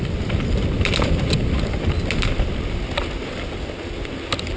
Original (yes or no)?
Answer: yes